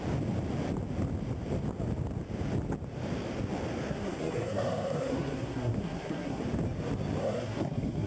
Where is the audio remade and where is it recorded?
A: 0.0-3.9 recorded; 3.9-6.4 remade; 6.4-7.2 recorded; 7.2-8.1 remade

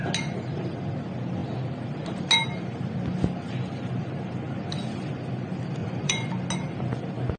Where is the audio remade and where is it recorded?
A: 0.0-5.8 recorded; 5.8-6.3 remade; 6.3-7.4 recorded

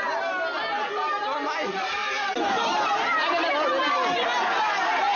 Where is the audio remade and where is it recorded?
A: 0.0-5.2 recorded

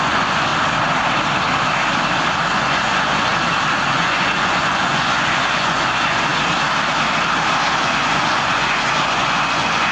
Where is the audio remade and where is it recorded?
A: 0.0-0.5 remade; 0.5-2.5 recorded; 2.5-3.3 remade; 3.3-3.9 recorded; 3.9-6.3 remade; 6.3-7.8 recorded; 7.8-9.9 remade

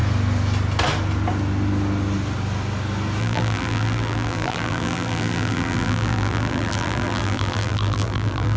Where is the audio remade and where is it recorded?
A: 0.0-3.2 recorded; 3.2-8.6 remade

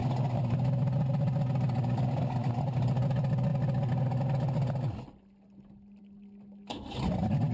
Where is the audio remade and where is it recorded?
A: 0.0-7.5 recorded